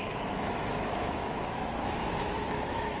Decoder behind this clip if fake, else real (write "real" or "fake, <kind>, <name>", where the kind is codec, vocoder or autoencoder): fake, autoencoder, DAC-VAE